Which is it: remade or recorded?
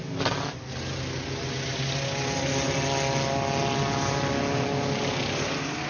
recorded